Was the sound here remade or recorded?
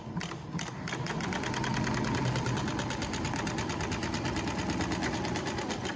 recorded